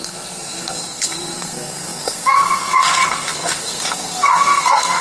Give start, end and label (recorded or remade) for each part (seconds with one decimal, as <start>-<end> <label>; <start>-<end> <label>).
0.0-5.0 remade